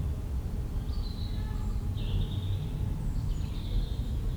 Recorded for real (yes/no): yes